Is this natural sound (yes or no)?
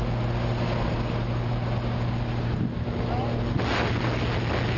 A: yes